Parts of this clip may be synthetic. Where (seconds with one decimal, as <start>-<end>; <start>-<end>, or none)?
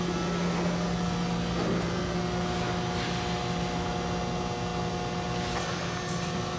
none